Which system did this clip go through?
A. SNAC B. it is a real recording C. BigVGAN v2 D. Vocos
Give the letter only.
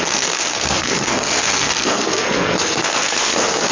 A